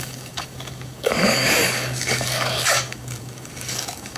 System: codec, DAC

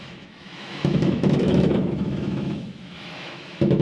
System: autoencoder, DAC-VAE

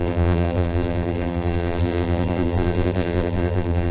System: vocoder, BigVGAN v2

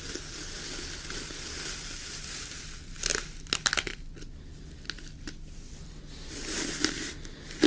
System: none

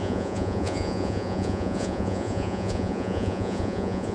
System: vocoder, Vocos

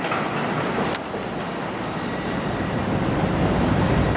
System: none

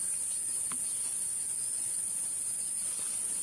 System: none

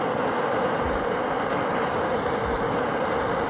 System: none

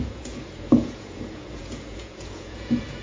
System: vocoder, Vocos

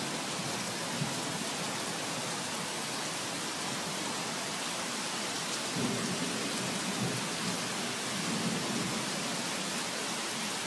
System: none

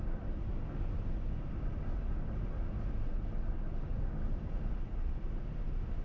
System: none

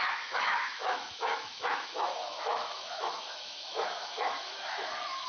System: autoencoder, DAC-VAE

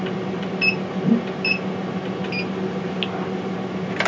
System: none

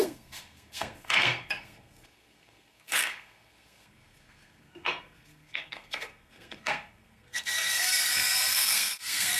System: codec, SNAC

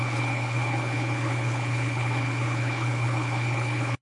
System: codec, HILCodec